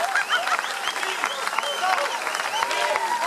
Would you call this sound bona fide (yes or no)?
yes